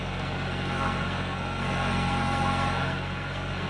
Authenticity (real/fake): fake